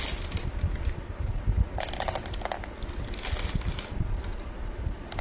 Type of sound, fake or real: real